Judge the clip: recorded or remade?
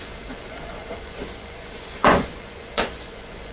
remade